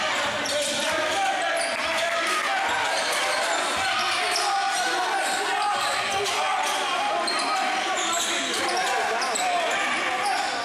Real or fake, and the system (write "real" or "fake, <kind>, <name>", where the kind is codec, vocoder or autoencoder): real